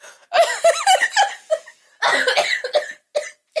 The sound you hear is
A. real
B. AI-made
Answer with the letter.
A